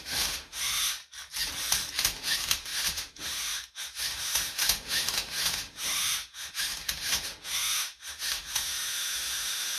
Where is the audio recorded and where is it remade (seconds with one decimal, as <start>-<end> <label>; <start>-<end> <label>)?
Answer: 0.0-1.0 remade; 1.0-2.0 recorded; 2.0-9.8 remade